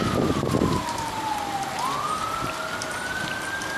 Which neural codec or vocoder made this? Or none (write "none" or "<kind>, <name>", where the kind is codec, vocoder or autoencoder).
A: none